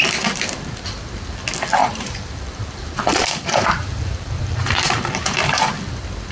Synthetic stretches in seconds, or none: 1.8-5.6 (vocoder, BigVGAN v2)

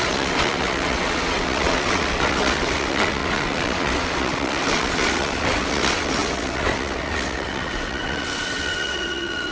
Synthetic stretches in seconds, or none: 0.0-9.5 (vocoder, WaveNeXt)

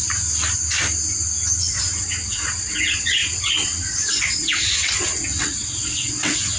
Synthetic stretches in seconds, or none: 1.6-6.6 (vocoder, WaveNeXt)